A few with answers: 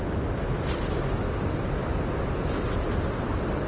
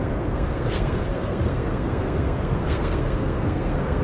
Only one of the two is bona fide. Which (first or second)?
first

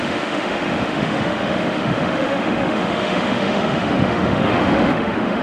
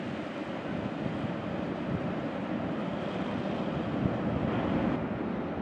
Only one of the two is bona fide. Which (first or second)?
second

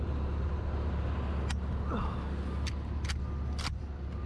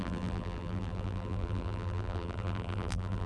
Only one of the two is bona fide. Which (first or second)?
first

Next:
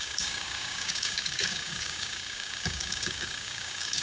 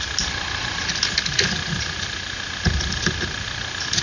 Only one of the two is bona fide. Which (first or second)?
second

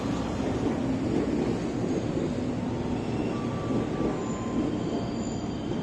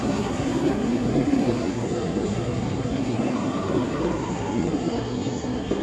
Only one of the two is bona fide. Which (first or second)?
first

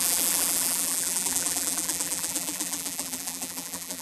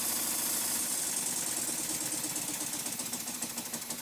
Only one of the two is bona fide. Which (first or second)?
second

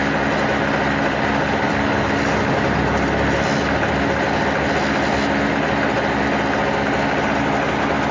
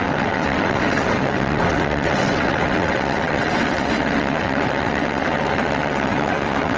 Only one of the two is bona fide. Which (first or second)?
first